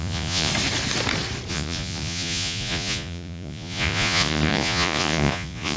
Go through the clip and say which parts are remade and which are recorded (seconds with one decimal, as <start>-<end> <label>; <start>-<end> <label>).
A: 0.0-0.5 remade; 0.5-1.5 recorded; 1.5-5.8 remade